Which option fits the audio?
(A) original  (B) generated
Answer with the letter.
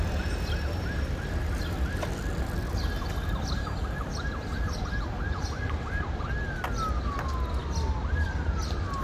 A